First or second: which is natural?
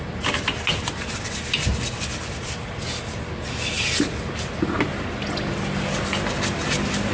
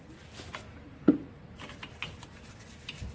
first